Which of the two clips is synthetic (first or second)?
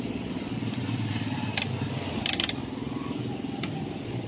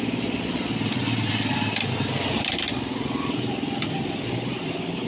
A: first